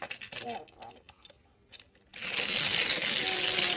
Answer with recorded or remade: recorded